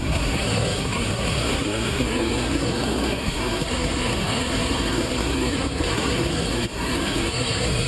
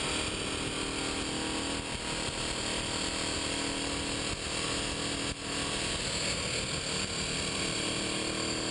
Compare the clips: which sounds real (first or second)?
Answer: second